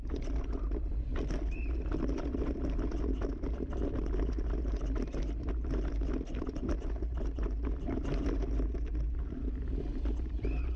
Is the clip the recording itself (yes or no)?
yes